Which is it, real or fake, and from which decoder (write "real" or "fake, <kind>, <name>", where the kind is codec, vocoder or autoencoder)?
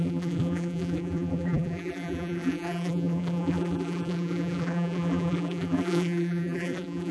fake, vocoder, BigVGAN v2